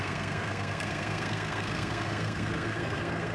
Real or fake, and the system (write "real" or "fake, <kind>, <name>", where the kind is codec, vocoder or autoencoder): fake, codec, SNAC